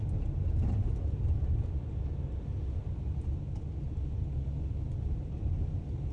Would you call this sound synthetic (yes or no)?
no